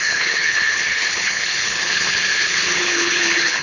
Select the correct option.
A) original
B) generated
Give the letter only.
B